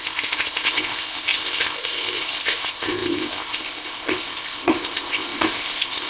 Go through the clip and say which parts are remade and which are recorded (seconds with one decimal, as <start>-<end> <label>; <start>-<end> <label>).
0.0-6.1 remade